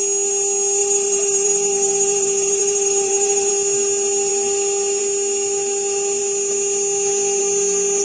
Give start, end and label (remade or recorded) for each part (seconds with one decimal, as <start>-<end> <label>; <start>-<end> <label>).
0.0-0.8 recorded; 0.8-3.5 remade; 3.5-8.0 recorded